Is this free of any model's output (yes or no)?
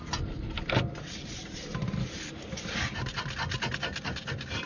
yes